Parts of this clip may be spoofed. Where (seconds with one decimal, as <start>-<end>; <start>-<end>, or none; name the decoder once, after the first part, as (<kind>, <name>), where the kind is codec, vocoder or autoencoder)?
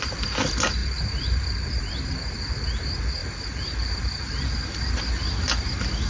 0.8-1.8 (vocoder, BigVGAN v2); 3.2-5.0